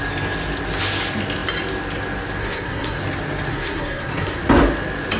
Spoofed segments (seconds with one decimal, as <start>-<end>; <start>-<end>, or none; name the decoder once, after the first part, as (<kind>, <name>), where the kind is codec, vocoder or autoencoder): 2.4-3.0 (codec, SNAC); 3.5-4.4